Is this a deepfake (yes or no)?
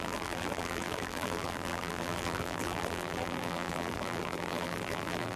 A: yes